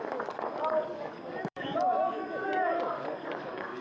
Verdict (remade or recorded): remade